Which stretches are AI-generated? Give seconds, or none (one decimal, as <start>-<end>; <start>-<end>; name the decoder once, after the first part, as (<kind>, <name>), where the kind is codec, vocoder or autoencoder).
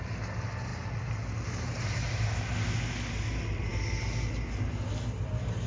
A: none